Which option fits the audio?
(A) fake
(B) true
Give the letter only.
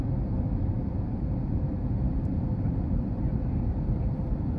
A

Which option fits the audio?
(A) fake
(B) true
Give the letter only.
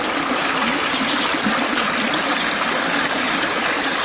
B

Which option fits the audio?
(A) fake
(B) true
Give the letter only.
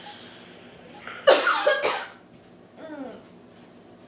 B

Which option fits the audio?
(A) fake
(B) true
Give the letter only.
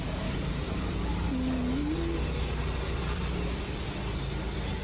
B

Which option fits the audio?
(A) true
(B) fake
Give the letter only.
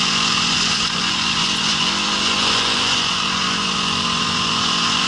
B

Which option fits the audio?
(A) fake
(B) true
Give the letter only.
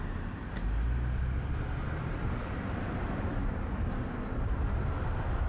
B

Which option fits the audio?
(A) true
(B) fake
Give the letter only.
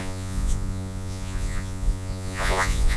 B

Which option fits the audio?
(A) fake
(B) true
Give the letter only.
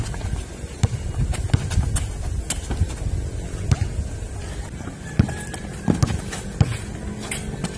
B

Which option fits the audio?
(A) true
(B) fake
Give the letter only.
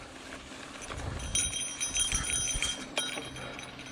A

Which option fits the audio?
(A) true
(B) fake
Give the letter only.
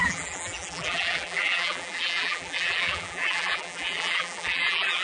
B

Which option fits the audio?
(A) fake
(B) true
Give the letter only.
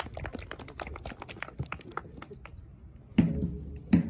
B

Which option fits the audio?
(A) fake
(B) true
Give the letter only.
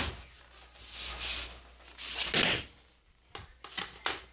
B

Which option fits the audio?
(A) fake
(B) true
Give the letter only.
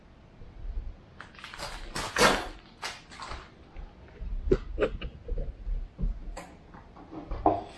B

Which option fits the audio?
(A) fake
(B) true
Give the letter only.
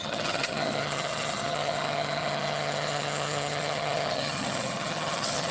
A